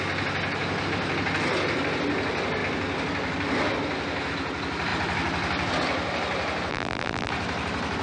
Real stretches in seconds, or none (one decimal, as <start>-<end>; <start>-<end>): 0.0-6.7; 7.3-8.0